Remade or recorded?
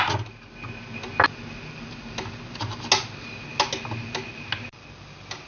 recorded